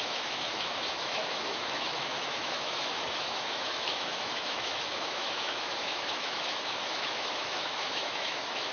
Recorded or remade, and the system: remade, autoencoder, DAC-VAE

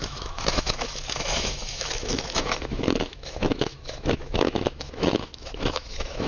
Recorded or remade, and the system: remade, autoencoder, DAC-VAE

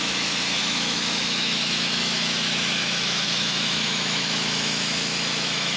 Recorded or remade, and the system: remade, autoencoder, DAC-VAE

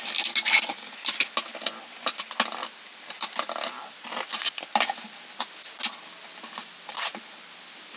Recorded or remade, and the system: recorded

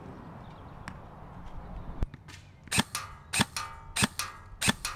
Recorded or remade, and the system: recorded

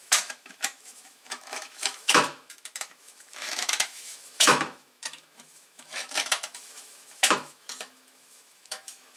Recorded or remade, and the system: remade, autoencoder, DAC-VAE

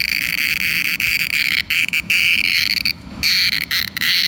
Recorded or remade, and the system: remade, autoencoder, DAC-VAE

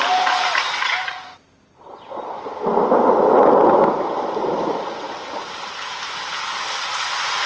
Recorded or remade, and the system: recorded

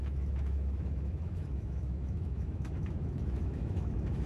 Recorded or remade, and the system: remade, autoencoder, DAC-VAE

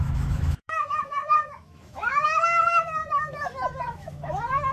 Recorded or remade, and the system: remade, autoencoder, DAC-VAE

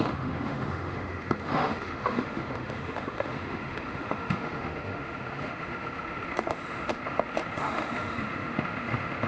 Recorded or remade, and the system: remade, autoencoder, DAC-VAE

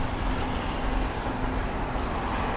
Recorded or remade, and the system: recorded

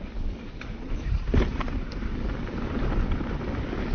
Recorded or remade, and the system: recorded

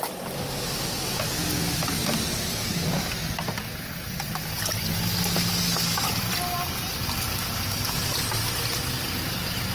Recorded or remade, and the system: recorded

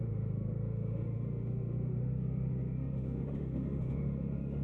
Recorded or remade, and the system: remade, autoencoder, DAC-VAE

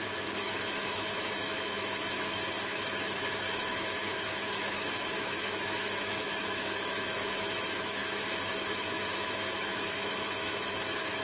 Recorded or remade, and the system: remade, autoencoder, DAC-VAE